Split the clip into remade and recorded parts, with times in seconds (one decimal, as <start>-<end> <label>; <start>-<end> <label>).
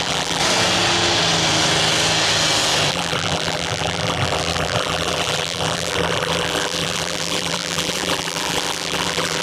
0.0-0.4 remade; 0.4-2.9 recorded; 2.9-9.4 remade